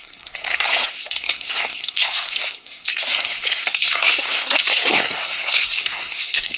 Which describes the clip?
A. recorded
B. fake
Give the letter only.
B